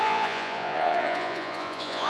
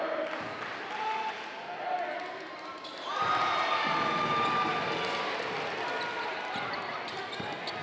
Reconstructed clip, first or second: first